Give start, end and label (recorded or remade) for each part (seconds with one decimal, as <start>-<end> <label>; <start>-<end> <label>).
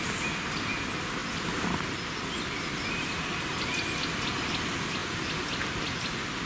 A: 0.0-6.5 recorded